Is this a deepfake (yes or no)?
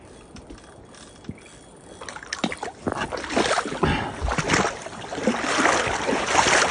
no